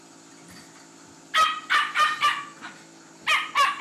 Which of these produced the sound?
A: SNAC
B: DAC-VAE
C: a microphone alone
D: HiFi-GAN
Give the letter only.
C